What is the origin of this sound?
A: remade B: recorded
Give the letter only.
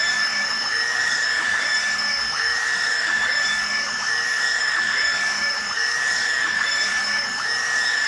A